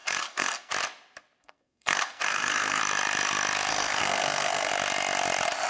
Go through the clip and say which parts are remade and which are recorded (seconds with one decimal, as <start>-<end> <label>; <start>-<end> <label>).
0.0-0.7 remade; 0.7-1.4 recorded; 1.4-2.8 remade; 2.8-3.7 recorded; 3.7-4.7 remade; 4.7-5.7 recorded

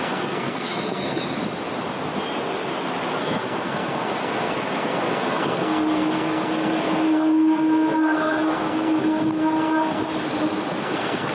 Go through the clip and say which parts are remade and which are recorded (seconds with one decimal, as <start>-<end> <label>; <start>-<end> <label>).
0.0-1.4 remade; 1.4-3.2 recorded; 3.2-10.0 remade; 10.0-10.8 recorded; 10.8-11.3 remade